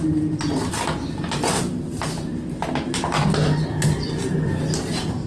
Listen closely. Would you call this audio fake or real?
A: real